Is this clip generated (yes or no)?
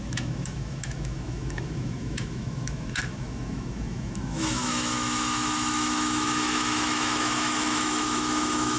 yes